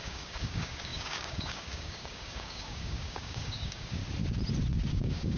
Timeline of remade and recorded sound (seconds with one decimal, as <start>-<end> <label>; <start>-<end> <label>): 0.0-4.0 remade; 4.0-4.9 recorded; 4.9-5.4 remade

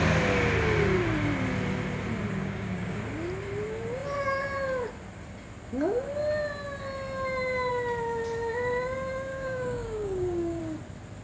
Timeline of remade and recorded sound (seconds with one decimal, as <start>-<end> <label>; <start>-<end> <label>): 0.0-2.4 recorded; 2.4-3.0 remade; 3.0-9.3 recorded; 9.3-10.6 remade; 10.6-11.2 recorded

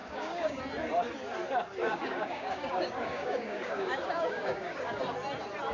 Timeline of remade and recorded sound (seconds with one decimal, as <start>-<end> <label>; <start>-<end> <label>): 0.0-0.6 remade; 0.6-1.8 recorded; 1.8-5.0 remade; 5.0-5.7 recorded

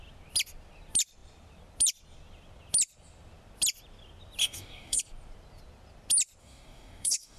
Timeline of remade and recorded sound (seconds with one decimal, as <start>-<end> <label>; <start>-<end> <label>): 0.0-4.4 recorded; 4.4-5.0 remade; 5.0-6.4 recorded; 6.4-7.4 remade